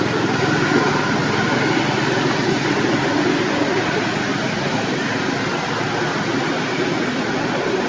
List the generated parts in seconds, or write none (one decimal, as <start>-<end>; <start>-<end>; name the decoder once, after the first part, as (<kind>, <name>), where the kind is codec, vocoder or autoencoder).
0.0-1.2 (vocoder, BigVGAN v2); 2.5-7.9